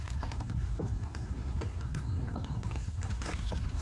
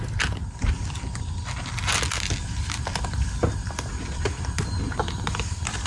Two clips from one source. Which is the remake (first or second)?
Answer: first